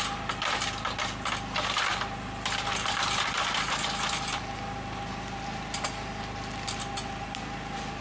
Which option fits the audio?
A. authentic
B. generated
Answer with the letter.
A